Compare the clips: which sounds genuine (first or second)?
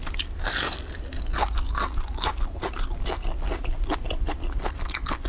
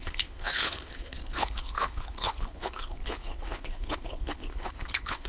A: first